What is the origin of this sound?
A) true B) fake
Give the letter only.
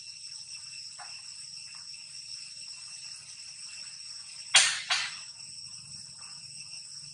A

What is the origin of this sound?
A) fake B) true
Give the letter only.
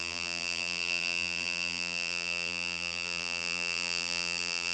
A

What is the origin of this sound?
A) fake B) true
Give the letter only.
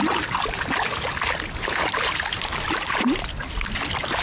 B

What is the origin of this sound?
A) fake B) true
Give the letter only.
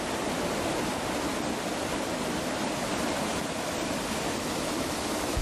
B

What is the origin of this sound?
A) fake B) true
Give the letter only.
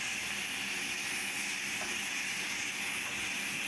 B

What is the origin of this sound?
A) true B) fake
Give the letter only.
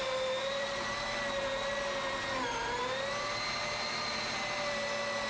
A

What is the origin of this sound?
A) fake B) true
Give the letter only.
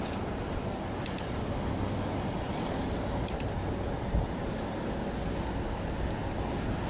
B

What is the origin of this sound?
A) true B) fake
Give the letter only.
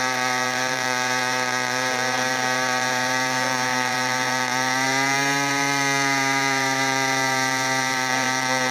B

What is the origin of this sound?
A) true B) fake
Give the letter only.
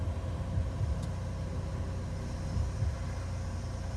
A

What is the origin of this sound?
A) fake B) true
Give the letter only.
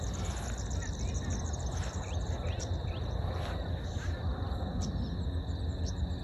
B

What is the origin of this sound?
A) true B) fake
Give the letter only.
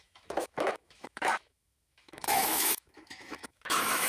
B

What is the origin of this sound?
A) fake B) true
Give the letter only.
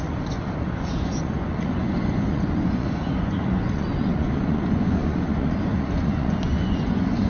A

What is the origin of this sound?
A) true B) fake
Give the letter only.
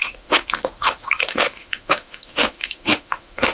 B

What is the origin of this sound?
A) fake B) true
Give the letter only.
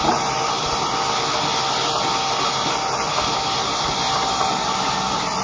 B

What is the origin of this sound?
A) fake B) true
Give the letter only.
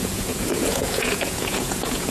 A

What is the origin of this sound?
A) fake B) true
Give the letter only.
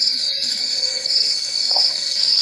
A